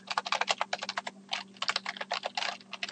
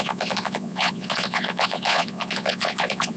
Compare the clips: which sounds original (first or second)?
first